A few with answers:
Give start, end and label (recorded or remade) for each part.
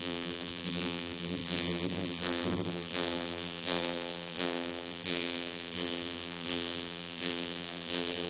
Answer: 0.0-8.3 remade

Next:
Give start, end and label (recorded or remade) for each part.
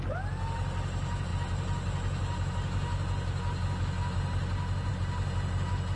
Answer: 0.0-6.0 recorded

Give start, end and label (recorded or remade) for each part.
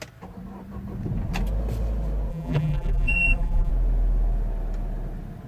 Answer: 0.0-2.3 recorded; 2.3-3.7 remade; 3.7-5.5 recorded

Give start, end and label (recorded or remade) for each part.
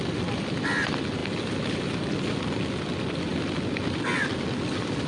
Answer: 0.0-5.1 recorded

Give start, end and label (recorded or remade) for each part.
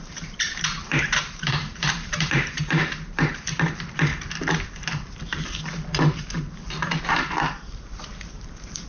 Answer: 0.0-4.1 remade; 4.1-7.0 recorded; 7.0-8.9 remade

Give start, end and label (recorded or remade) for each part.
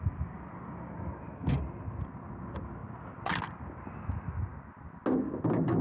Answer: 0.0-5.8 recorded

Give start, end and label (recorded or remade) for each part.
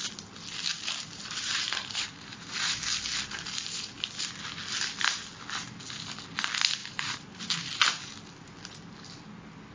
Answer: 0.0-0.7 recorded; 0.7-2.8 remade; 2.8-6.8 recorded; 6.8-7.4 remade; 7.4-9.7 recorded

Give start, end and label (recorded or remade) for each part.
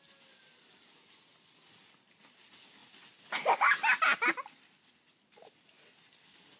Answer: 0.0-6.6 recorded